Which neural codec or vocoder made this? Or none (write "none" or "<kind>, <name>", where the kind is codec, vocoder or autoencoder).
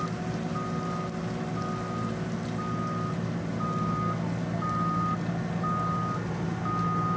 none